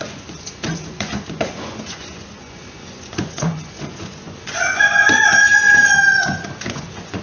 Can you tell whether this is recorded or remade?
remade